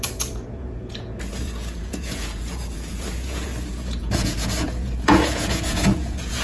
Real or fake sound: fake